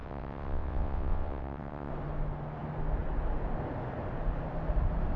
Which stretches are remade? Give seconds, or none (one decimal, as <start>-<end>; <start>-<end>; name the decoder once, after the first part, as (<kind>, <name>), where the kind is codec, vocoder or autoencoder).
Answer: 0.0-1.9 (vocoder, WaveNeXt)